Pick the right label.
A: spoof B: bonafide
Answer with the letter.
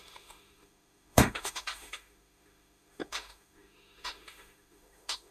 A